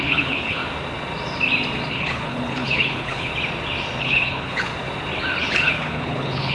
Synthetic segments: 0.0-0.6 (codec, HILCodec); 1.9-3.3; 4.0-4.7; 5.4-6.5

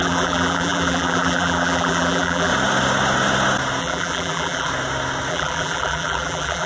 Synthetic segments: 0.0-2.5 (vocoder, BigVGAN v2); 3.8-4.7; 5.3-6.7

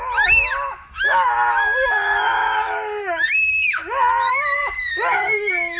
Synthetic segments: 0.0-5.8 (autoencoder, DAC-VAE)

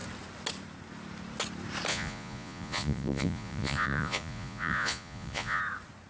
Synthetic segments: 1.9-5.6 (vocoder, Vocos)

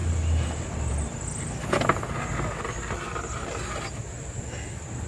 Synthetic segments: none

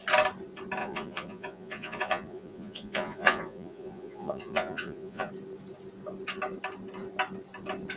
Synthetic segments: 0.8-5.3 (vocoder, Vocos)